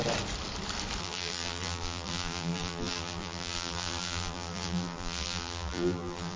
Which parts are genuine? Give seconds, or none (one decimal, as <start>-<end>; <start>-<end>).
0.0-1.0